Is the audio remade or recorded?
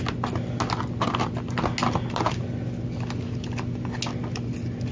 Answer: recorded